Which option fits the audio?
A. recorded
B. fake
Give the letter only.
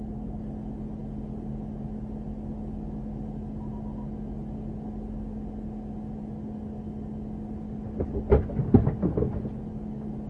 A